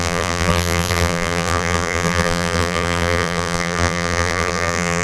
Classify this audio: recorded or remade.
remade